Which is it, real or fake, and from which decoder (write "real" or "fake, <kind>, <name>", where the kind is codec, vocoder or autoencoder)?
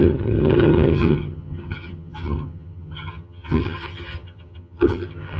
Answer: fake, vocoder, HiFi-GAN